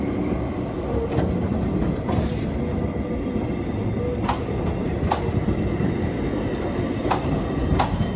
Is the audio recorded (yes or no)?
yes